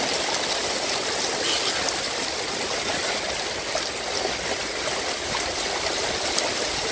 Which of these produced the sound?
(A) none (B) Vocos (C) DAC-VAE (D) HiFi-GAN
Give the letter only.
A